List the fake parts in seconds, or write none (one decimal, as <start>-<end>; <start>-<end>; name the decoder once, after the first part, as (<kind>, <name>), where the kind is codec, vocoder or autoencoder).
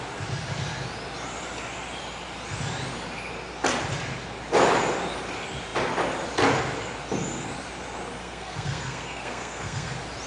8.2-9.9 (codec, SNAC)